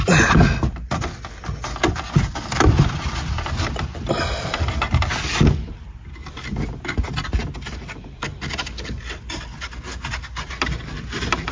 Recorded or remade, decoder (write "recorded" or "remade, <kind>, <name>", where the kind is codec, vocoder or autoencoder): recorded